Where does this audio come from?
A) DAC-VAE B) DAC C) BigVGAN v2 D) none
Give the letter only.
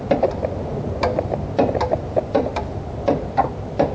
D